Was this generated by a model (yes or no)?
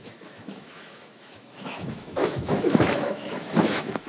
yes